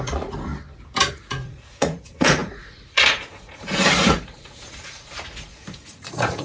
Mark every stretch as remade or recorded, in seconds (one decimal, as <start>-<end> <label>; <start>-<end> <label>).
0.0-0.5 remade; 0.5-1.1 recorded; 1.1-6.4 remade